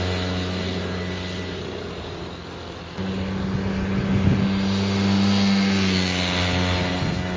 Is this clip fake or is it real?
real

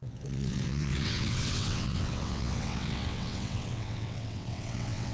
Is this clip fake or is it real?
fake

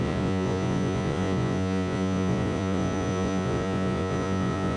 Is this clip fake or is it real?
fake